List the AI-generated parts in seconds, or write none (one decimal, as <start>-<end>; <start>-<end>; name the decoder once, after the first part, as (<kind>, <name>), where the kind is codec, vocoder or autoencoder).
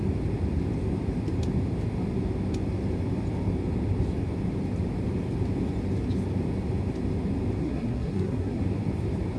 7.6-8.6 (codec, SNAC)